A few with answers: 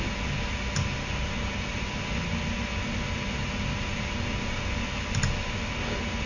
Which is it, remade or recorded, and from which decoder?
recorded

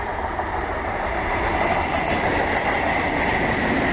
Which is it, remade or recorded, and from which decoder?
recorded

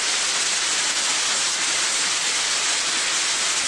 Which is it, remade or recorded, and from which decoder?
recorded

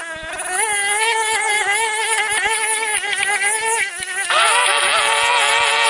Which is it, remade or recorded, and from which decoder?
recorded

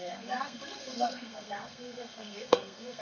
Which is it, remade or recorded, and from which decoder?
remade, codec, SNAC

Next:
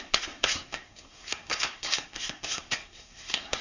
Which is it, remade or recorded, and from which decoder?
remade, codec, SNAC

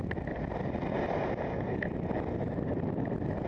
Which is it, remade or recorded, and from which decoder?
recorded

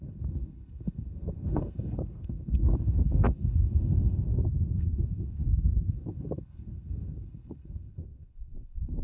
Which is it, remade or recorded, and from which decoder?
remade, codec, SNAC